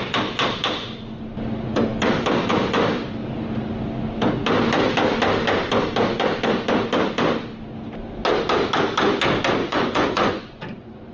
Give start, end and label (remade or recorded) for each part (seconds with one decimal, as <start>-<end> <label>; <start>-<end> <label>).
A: 0.0-9.6 recorded; 9.6-11.1 remade